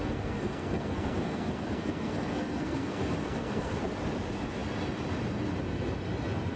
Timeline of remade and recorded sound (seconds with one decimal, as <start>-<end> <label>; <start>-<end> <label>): 0.0-3.8 remade; 3.8-6.6 recorded